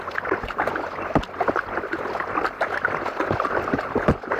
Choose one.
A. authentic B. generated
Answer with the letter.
A